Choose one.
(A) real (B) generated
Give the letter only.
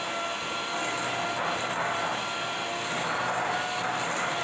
A